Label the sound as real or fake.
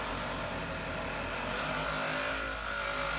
real